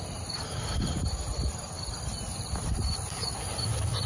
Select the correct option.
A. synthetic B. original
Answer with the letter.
B